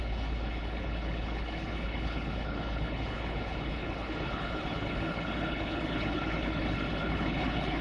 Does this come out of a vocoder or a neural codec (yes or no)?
yes